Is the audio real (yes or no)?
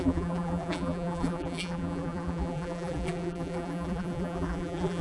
no